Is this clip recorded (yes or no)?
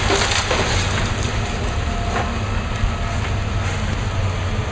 yes